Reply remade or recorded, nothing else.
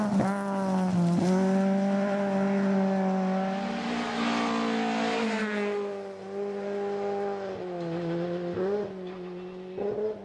recorded